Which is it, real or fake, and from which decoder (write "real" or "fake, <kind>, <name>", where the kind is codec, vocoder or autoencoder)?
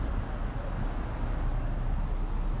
real